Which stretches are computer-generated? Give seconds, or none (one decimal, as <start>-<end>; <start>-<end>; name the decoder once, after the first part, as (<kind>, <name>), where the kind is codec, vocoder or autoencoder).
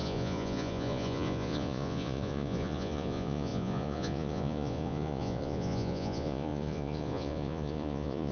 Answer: 0.0-8.3 (vocoder, Vocos)